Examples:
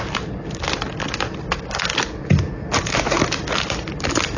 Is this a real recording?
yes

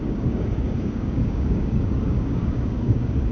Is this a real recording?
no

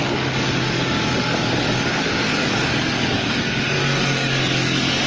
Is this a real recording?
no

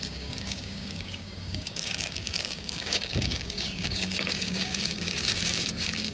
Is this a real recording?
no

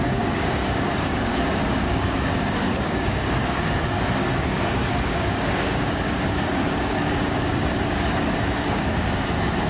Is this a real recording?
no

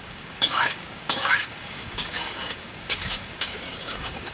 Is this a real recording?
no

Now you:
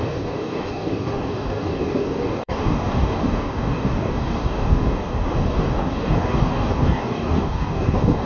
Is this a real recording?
no